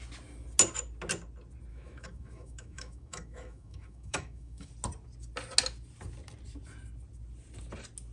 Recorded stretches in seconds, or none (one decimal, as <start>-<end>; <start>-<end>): 0.0-1.7; 4.7-8.1